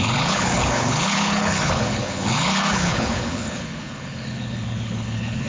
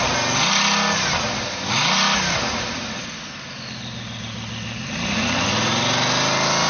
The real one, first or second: second